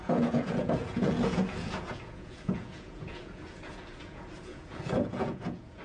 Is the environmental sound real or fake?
fake